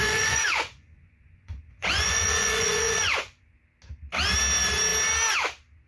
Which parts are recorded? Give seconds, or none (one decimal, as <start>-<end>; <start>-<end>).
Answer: 3.5-5.9